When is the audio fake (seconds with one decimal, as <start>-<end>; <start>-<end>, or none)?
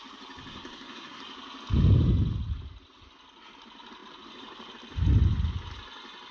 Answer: 0.5-1.2